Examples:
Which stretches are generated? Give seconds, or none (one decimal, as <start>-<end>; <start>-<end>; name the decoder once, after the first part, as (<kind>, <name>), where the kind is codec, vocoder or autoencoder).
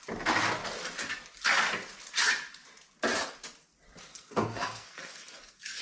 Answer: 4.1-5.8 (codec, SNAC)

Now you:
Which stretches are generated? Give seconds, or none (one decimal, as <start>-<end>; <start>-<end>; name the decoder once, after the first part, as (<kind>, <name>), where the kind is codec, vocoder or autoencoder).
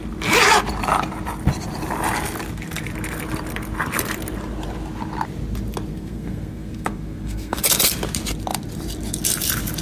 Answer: 5.9-7.6 (codec, SNAC)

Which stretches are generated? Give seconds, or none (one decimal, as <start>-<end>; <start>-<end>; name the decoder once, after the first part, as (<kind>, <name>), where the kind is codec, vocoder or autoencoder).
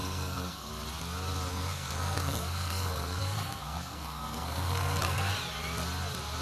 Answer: 0.0-0.7 (codec, SNAC); 1.5-5.3